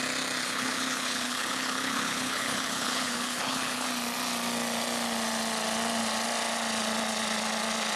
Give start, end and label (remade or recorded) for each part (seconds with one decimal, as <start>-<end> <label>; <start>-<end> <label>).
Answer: 0.0-0.4 recorded; 0.4-3.9 remade; 3.9-8.0 recorded